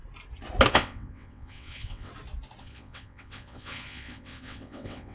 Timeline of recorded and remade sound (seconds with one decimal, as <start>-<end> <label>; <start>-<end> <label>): 0.0-0.7 recorded; 0.7-2.1 remade; 2.1-2.6 recorded; 2.6-5.1 remade